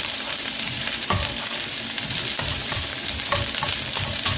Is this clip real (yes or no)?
no